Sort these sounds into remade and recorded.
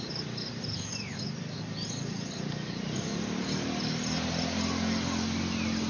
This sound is recorded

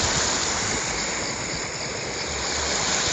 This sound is recorded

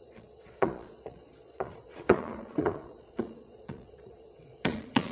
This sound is remade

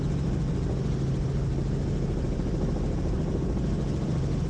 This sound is recorded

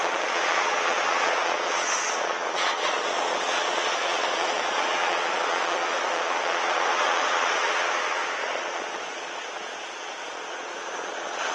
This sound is remade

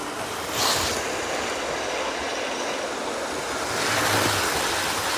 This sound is recorded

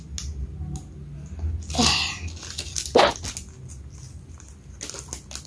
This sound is recorded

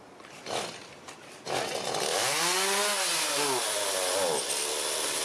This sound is recorded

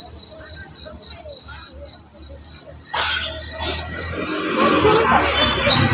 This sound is recorded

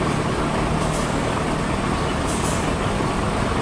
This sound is recorded